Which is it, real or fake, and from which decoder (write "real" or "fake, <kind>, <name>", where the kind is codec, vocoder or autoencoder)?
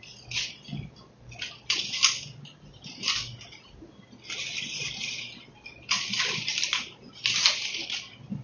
real